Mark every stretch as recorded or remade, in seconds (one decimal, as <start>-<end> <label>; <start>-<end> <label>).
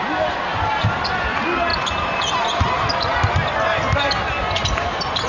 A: 0.0-5.3 recorded